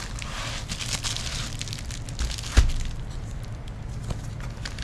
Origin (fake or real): real